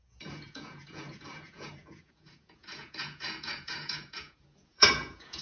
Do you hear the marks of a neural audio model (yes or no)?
yes